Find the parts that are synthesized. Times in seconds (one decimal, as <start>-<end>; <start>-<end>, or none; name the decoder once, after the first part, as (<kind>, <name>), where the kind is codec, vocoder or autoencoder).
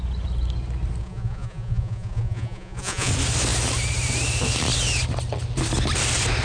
1.0-3.1 (vocoder, Vocos)